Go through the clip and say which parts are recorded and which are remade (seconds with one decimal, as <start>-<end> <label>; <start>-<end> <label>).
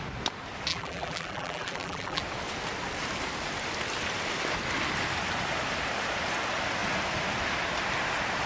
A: 0.0-0.7 recorded; 0.7-2.2 remade; 2.2-8.5 recorded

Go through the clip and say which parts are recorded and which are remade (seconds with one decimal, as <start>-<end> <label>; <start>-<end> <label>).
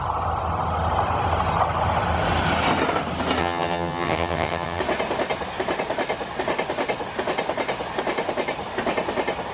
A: 0.0-3.4 recorded; 3.4-4.8 remade; 4.8-9.5 recorded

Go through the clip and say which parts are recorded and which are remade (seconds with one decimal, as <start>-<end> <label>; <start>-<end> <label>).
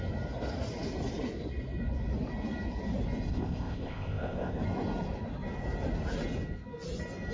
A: 0.0-3.3 recorded; 3.3-4.6 remade; 4.6-7.3 recorded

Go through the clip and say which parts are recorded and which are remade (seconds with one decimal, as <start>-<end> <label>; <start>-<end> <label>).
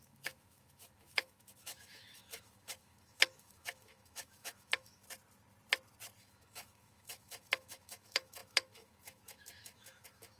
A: 0.0-5.0 remade; 5.0-6.2 recorded; 6.2-10.4 remade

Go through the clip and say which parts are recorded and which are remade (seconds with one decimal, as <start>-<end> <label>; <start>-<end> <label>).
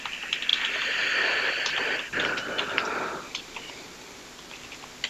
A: 0.0-5.1 recorded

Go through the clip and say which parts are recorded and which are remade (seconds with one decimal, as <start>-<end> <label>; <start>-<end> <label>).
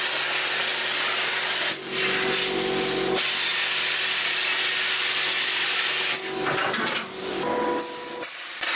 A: 0.0-8.8 recorded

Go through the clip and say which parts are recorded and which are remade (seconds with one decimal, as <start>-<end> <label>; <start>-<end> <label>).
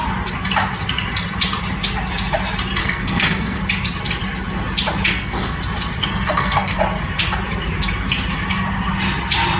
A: 0.0-2.8 recorded; 2.8-3.6 remade; 3.6-5.1 recorded; 5.1-5.6 remade; 5.6-6.1 recorded; 6.1-6.8 remade; 6.8-9.6 recorded